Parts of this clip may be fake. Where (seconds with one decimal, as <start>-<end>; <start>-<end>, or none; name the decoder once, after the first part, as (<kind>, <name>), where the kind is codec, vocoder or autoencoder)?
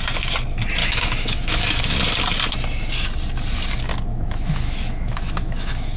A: 0.8-1.8 (autoencoder, DAC-VAE); 4.1-6.0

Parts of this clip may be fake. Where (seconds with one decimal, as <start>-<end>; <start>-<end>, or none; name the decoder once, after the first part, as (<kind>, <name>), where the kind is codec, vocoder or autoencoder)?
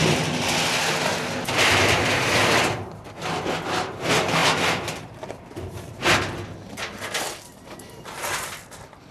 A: 4.4-5.4 (vocoder, BigVGAN v2)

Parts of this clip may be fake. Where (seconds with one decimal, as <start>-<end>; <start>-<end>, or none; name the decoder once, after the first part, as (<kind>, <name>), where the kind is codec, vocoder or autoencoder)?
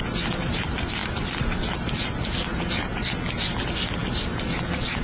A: none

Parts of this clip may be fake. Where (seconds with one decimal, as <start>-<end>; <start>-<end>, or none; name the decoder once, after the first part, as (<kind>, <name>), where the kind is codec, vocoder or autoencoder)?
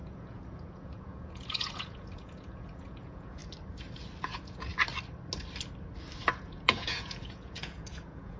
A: 0.0-3.4 (vocoder, Vocos); 4.2-4.7; 6.3-8.4